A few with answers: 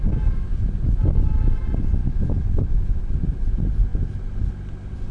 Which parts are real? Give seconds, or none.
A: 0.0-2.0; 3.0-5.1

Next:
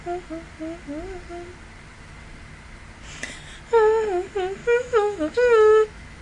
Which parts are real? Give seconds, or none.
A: 0.0-4.6